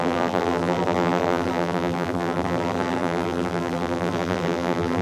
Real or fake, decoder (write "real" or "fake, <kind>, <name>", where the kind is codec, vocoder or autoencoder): fake, vocoder, BigVGAN v2